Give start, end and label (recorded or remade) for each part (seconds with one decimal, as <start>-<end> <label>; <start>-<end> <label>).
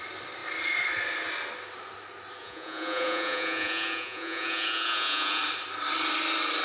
0.0-2.4 recorded; 2.4-5.4 remade; 5.4-6.6 recorded